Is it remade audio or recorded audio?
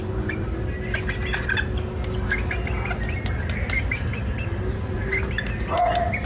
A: recorded